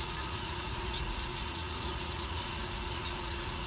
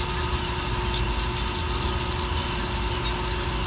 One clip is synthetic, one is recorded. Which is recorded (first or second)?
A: second